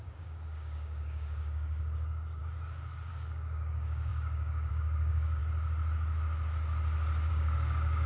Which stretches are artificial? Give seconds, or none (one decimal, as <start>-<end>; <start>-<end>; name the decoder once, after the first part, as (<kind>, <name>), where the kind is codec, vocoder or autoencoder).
0.0-2.4 (codec, DAC); 3.1-5.4; 7.3-8.1